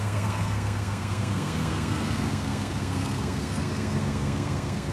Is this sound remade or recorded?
remade